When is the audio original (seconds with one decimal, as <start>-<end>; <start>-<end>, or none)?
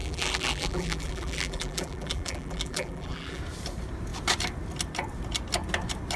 3.4-6.2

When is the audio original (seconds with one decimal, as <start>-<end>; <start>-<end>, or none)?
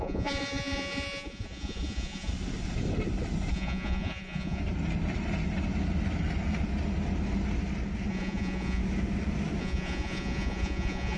2.3-3.5; 4.6-8.1; 8.8-9.6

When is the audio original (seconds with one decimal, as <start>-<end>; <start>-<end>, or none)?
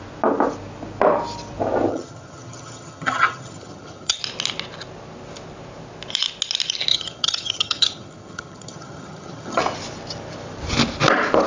0.0-1.9; 4.2-6.9; 9.6-11.5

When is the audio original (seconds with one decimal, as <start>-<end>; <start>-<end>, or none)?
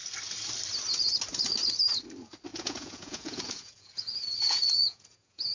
0.0-2.5